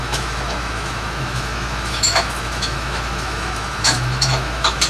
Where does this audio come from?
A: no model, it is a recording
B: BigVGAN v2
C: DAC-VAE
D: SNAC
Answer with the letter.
C